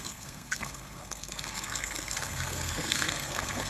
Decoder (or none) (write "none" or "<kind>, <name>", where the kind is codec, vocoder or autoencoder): codec, SNAC